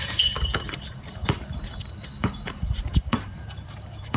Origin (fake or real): fake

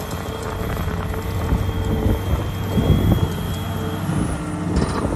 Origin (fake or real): real